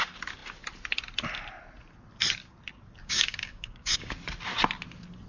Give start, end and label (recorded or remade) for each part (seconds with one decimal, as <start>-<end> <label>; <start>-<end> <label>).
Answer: 0.0-3.0 recorded; 3.0-4.1 remade; 4.1-5.3 recorded